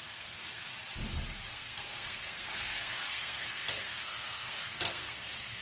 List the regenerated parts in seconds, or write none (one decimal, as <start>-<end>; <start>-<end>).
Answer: 0.0-0.7; 1.5-5.6